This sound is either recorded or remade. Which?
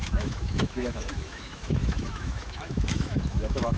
remade